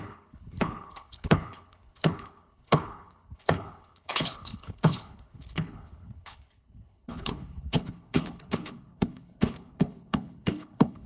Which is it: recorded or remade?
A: remade